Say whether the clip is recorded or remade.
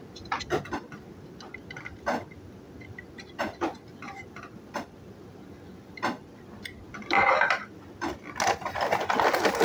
recorded